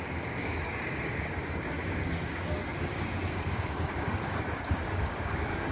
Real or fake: fake